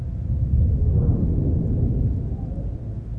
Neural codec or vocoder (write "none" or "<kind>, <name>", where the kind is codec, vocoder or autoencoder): none